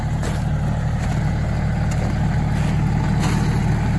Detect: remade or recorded recorded